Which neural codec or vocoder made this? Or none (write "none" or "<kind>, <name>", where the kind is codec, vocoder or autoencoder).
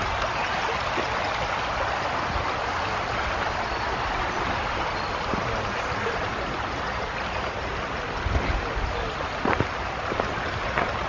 none